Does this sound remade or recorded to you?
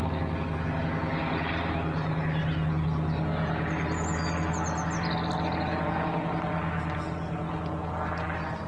recorded